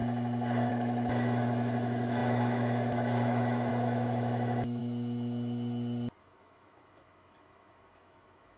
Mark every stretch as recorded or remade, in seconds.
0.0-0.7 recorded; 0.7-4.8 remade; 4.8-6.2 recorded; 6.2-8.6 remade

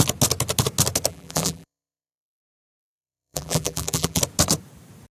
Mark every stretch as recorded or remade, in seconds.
0.0-1.1 recorded; 1.1-4.2 remade; 4.2-5.2 recorded

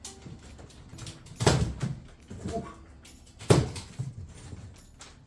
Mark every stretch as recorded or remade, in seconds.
0.0-5.3 recorded

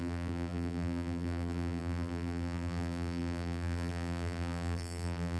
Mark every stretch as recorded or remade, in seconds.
0.0-5.4 remade

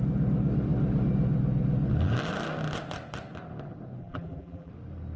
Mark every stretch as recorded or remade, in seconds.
0.0-4.0 recorded; 4.0-4.7 remade; 4.7-5.2 recorded